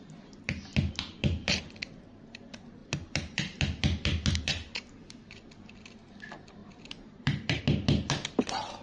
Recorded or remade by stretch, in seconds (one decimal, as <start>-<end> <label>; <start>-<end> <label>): 0.0-1.4 recorded; 1.4-2.0 remade; 2.0-6.6 recorded; 6.6-7.6 remade; 7.6-8.8 recorded